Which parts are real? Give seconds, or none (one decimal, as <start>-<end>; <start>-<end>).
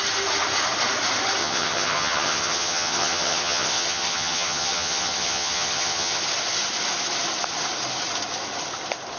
0.0-1.4; 6.2-9.2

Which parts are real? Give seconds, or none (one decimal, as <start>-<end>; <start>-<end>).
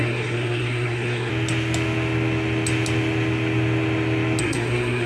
1.3-4.4